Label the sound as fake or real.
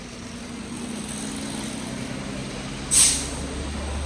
real